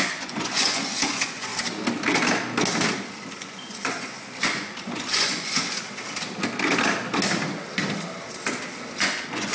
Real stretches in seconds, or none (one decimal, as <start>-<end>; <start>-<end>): 1.5-3.3; 5.6-8.9